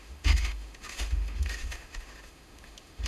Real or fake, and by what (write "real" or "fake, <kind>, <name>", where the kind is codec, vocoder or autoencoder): fake, autoencoder, DAC-VAE